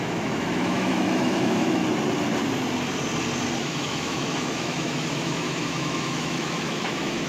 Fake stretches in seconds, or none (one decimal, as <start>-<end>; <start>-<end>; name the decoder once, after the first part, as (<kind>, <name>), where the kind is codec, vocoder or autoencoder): 0.0-1.8 (autoencoder, DAC-VAE); 3.6-7.3